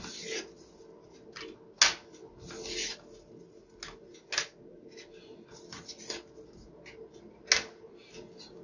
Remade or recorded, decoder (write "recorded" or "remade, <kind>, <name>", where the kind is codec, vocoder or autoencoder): recorded